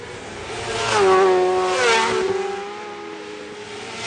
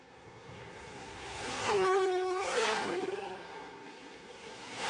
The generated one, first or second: second